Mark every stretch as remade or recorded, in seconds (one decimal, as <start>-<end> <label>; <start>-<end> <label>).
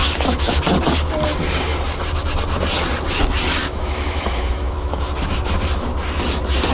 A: 0.0-0.6 remade; 0.6-3.6 recorded; 3.6-5.0 remade; 5.0-6.7 recorded